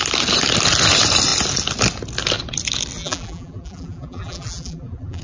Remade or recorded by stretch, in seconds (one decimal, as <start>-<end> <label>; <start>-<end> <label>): 0.0-3.0 recorded; 3.0-5.2 remade